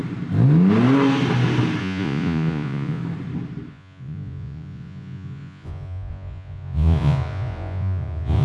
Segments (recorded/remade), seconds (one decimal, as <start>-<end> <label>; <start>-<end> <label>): 0.0-1.8 recorded; 1.8-3.0 remade; 3.0-3.7 recorded; 3.7-8.4 remade